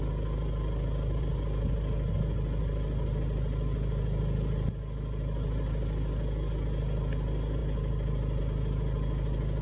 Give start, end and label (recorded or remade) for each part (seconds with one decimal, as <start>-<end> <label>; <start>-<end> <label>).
0.0-9.6 recorded